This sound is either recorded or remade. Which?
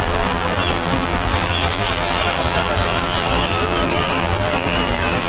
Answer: remade